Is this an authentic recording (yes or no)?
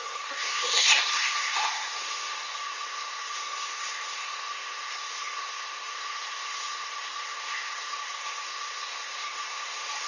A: no